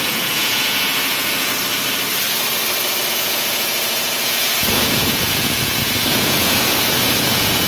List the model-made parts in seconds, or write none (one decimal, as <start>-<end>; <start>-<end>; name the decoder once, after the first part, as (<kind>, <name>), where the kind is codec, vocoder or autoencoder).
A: 0.0-1.5 (vocoder, Vocos); 3.1-7.7